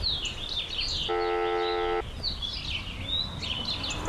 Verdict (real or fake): real